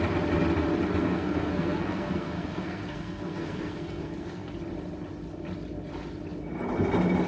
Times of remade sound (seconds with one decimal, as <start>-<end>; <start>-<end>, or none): 1.0-4.5